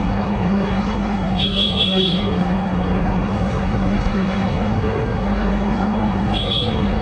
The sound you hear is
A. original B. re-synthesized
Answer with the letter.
B